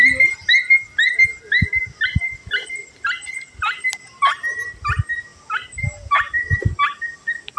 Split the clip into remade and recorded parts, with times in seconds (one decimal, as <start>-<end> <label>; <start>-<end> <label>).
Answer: 0.0-7.6 recorded